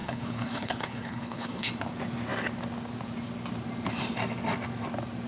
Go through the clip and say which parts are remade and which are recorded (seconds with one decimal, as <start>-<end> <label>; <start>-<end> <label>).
0.0-1.7 remade; 1.7-5.3 recorded